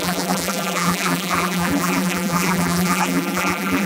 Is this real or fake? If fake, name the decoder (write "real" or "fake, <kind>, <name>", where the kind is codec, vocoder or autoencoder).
fake, vocoder, BigVGAN v2